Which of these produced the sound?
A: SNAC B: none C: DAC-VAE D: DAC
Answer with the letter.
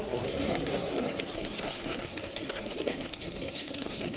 A